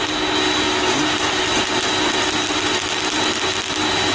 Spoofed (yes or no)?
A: no